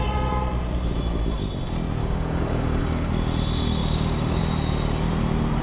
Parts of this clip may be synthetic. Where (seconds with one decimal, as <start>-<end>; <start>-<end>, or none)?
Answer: 2.0-3.1; 3.8-4.4